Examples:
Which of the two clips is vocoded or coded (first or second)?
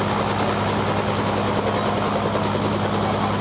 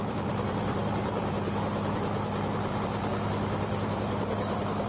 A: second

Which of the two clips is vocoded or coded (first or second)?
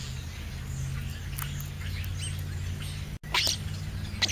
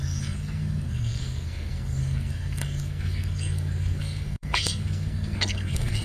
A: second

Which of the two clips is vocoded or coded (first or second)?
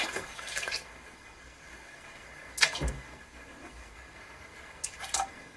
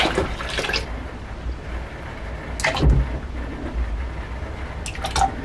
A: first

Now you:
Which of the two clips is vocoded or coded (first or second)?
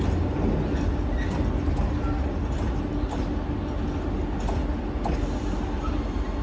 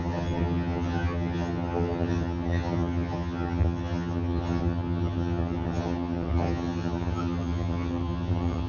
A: second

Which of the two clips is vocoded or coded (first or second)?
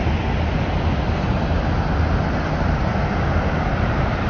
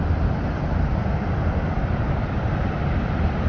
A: second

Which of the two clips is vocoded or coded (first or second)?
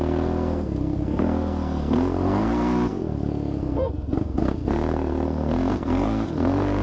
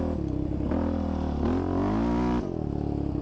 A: first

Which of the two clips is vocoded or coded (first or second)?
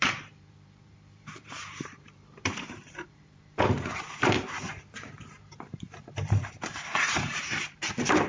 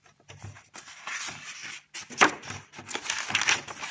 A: first